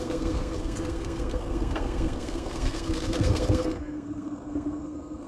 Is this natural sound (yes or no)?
no